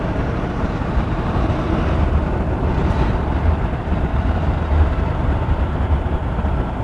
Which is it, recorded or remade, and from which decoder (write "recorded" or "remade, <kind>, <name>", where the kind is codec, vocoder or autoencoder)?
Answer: remade, vocoder, BigVGAN v2